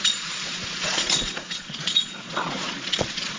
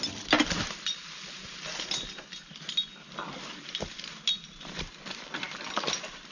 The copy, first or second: first